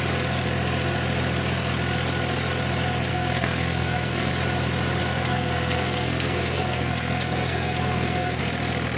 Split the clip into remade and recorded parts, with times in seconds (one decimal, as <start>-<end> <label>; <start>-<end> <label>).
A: 0.0-3.1 recorded; 3.1-4.3 remade; 4.3-5.0 recorded; 5.0-8.4 remade; 8.4-9.0 recorded